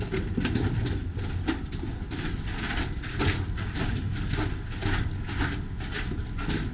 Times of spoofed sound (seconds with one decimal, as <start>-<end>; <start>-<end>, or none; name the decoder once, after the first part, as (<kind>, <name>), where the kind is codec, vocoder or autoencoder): none

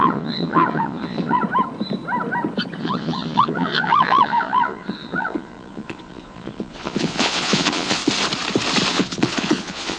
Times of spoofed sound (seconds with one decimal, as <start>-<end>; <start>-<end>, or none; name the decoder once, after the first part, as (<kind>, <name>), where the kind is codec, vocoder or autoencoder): 0.0-1.4 (vocoder, Vocos); 2.8-8.0; 8.9-10.0